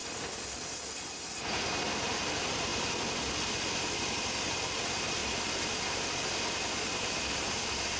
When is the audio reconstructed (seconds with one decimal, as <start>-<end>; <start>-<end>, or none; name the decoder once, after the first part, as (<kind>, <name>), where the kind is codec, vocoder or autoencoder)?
2.3-2.7 (vocoder, BigVGAN v2); 3.2-5.2; 5.9-8.0